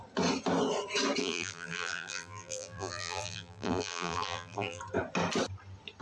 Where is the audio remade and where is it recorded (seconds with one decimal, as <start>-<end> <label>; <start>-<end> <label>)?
0.0-1.2 recorded; 1.2-4.8 remade; 4.8-6.0 recorded